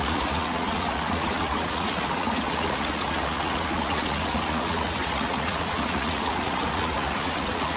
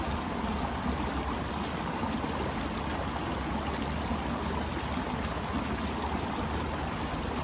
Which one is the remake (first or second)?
first